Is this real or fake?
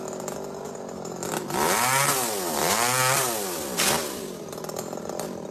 real